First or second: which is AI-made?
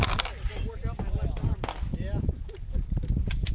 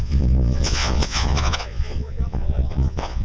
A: second